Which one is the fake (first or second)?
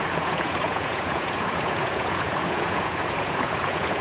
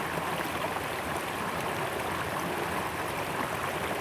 first